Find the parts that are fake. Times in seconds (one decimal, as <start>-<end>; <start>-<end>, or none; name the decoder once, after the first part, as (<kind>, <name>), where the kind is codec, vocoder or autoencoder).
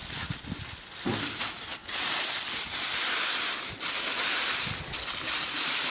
none